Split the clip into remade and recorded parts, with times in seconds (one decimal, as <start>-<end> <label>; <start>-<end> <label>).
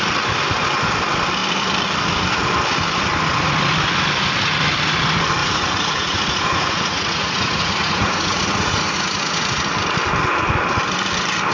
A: 0.0-5.4 recorded; 5.4-9.6 remade; 9.6-11.5 recorded